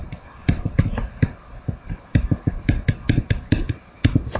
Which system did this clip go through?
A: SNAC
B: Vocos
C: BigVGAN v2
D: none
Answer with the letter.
D